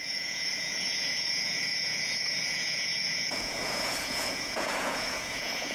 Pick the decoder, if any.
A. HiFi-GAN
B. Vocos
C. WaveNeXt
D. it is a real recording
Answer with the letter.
B